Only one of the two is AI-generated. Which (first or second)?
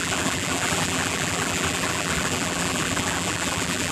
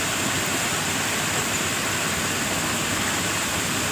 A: first